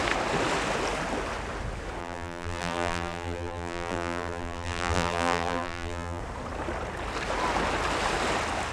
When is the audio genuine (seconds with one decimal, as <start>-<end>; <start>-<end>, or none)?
0.0-2.0; 6.2-8.7